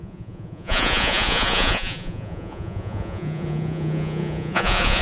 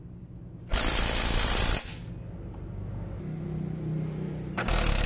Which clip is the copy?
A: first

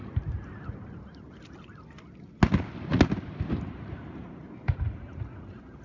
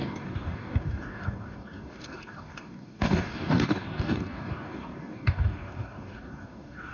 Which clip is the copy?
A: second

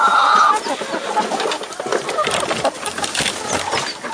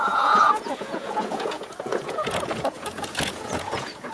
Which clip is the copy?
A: second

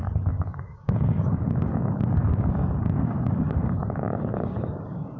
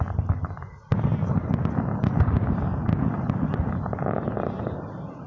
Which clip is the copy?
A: first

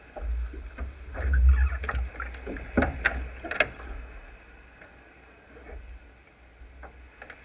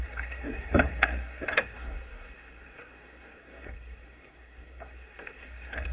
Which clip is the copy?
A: second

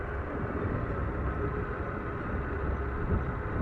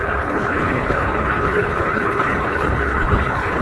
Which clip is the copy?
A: second